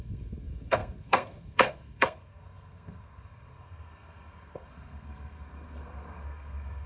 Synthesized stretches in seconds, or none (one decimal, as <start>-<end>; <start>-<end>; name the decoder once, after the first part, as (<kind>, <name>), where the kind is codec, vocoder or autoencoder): 0.0-6.9 (codec, SNAC)

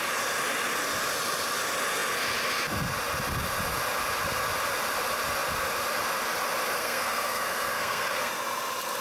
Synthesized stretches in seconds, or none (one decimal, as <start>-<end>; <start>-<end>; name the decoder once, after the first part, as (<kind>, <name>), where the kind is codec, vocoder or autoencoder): 6.8-8.3 (codec, SNAC)

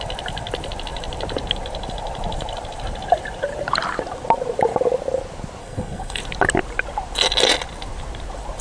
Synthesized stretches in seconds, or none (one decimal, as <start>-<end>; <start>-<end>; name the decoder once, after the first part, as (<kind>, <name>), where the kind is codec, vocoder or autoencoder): 5.6-6.2 (codec, SNAC)

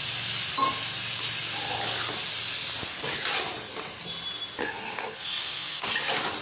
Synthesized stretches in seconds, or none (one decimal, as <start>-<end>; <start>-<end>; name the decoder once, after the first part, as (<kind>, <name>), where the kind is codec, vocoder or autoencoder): 4.6-5.9 (codec, SNAC)

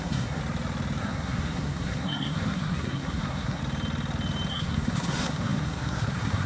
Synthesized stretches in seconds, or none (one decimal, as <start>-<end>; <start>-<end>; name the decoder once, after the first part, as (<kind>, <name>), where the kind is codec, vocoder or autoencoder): 0.0-0.4 (codec, SNAC); 1.0-3.6; 4.5-6.5

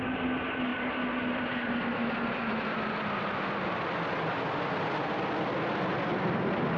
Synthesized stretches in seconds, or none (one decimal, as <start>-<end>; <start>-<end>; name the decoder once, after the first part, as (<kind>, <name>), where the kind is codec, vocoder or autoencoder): none

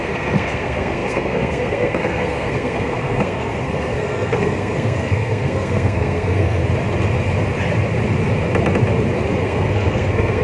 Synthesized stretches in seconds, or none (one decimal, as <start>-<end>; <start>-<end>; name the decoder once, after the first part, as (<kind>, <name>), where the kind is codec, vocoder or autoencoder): 0.0-6.6 (codec, SNAC); 9.4-10.4

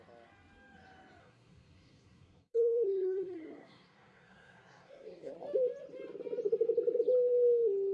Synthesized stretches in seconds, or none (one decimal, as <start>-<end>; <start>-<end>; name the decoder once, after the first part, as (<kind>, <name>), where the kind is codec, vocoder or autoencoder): 1.2-5.3 (codec, SNAC)